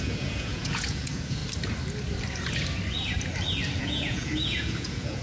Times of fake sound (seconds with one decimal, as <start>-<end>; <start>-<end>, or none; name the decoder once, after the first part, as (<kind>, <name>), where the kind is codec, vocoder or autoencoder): 0.0-1.4 (vocoder, Vocos); 3.8-5.2